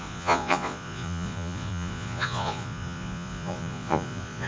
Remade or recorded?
remade